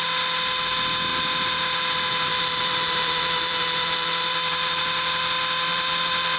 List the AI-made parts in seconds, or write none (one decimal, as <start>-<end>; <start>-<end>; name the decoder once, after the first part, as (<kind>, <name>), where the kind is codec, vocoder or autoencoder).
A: 2.3-4.8 (vocoder, BigVGAN v2); 5.7-6.4

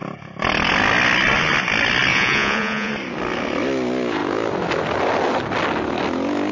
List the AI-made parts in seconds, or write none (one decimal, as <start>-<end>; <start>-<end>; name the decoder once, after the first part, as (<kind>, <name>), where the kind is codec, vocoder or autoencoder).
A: 2.1-2.9 (vocoder, Vocos)